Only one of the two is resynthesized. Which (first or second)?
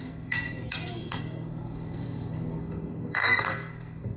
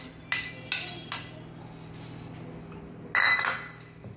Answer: first